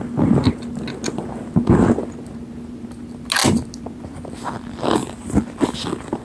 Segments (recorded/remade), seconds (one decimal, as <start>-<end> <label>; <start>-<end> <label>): 0.0-6.2 recorded